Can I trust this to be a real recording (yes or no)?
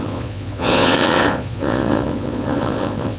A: no